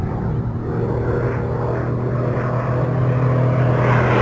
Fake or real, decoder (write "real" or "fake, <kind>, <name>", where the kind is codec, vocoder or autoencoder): real